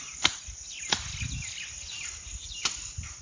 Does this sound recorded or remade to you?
recorded